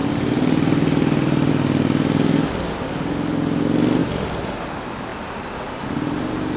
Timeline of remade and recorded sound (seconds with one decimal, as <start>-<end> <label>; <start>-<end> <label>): 0.0-1.5 remade; 1.5-4.0 recorded; 4.0-4.6 remade; 4.6-6.6 recorded